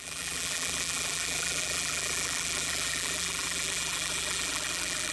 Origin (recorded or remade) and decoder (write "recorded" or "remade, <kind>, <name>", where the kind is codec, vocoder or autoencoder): remade, vocoder, BigVGAN v2